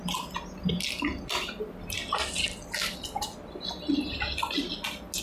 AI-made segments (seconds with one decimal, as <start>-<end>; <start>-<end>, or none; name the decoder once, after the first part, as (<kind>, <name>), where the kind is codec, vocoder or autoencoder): none